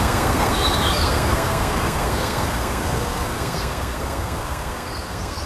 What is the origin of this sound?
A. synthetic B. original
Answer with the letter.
A